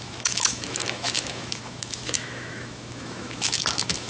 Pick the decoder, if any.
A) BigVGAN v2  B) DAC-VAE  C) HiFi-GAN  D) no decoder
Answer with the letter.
B